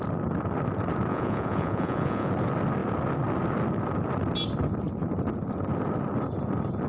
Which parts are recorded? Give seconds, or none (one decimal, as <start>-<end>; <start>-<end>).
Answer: 0.0-1.1; 2.3-6.9